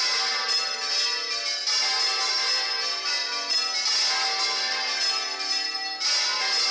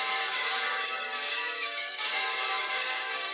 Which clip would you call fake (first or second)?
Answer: second